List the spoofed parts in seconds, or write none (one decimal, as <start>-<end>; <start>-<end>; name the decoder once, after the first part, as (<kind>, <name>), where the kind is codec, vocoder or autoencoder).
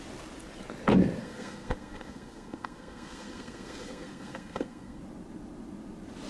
1.2-5.0 (codec, SNAC)